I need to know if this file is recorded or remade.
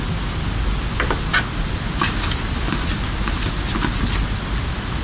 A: recorded